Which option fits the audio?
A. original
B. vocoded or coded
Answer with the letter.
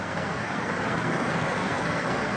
B